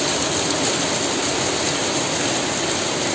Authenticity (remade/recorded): recorded